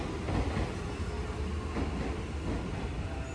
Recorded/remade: recorded